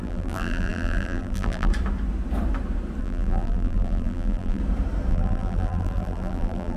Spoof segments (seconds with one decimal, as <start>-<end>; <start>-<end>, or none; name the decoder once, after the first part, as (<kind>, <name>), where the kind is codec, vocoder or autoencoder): 0.0-1.7 (vocoder, BigVGAN v2); 3.0-4.6; 5.1-6.8